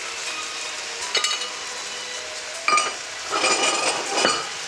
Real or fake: real